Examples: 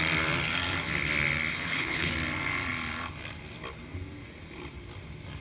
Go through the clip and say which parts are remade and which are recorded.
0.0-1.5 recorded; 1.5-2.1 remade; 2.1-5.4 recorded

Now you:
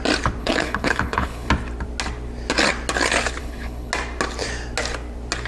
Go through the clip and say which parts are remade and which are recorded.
0.0-0.4 recorded; 0.4-1.5 remade; 1.5-3.4 recorded; 3.4-3.9 remade; 3.9-5.5 recorded

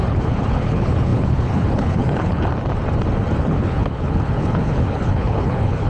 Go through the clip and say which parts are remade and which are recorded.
0.0-2.5 remade; 2.5-3.4 recorded; 3.4-5.9 remade